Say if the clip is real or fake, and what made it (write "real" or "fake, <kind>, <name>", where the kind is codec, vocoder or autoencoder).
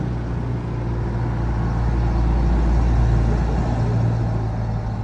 real